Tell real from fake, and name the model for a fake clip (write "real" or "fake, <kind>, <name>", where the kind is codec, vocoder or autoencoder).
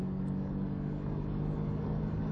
fake, codec, DAC